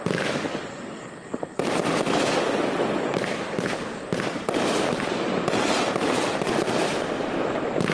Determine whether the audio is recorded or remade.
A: recorded